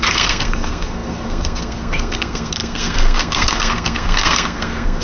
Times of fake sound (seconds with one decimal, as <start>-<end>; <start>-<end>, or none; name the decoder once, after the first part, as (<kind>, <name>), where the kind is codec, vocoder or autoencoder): 0.0-5.0 (codec, SNAC)